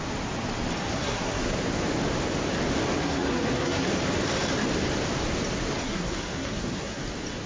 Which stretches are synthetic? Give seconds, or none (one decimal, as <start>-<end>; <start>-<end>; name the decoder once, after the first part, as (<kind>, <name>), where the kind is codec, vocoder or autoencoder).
0.9-1.4 (codec, SNAC); 3.0-3.9; 5.8-7.0